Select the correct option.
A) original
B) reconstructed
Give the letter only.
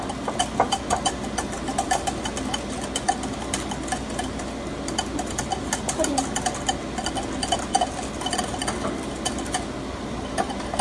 A